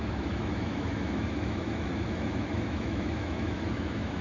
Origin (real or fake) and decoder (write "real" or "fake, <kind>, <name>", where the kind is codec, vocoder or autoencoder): fake, autoencoder, DAC-VAE